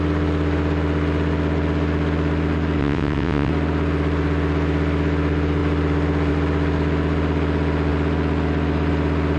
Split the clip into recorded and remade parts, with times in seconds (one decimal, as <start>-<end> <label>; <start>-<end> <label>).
0.0-2.8 recorded; 2.8-3.5 remade; 3.5-9.4 recorded